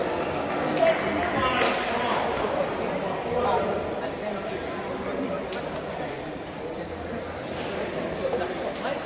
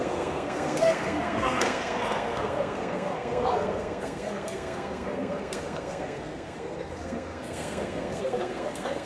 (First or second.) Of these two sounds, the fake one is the second